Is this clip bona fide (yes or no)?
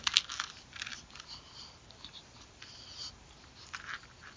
yes